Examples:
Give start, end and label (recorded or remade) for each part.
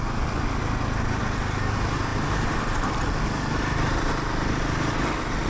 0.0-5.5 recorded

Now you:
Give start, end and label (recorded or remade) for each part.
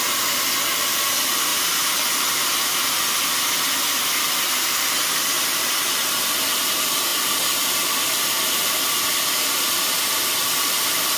0.0-1.5 remade; 1.5-2.1 recorded; 2.1-11.2 remade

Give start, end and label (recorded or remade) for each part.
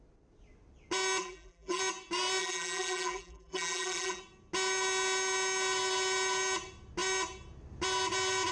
0.0-1.2 recorded; 1.2-1.8 remade; 1.8-2.4 recorded; 2.4-4.2 remade; 4.2-8.5 recorded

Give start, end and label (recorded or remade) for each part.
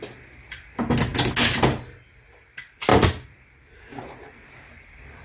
0.0-1.1 remade; 1.1-2.1 recorded; 2.1-2.9 remade; 2.9-4.2 recorded; 4.2-5.2 remade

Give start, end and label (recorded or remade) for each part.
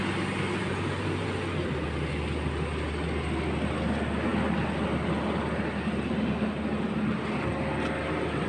0.0-0.6 recorded; 0.6-1.3 remade; 1.3-8.5 recorded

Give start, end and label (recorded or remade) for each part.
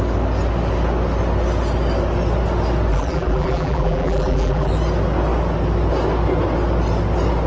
0.0-2.9 recorded; 2.9-4.7 remade; 4.7-7.5 recorded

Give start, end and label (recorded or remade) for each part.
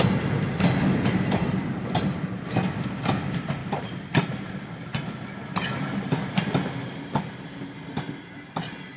0.0-3.6 recorded; 3.6-4.5 remade; 4.5-5.4 recorded; 5.4-6.3 remade; 6.3-9.0 recorded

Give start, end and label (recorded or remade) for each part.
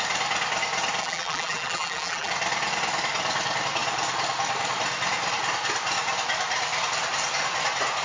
0.0-1.0 recorded; 1.0-2.3 remade; 2.3-8.0 recorded